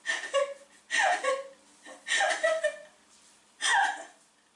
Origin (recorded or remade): recorded